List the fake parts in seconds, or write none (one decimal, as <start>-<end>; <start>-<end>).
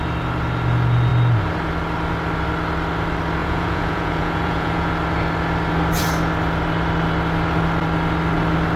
3.4-4.9